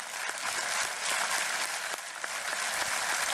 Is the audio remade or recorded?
recorded